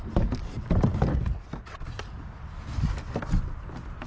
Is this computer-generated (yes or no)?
no